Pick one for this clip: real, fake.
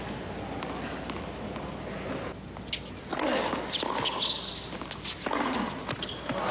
real